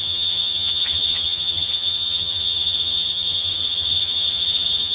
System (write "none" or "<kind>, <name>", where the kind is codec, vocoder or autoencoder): vocoder, HiFi-GAN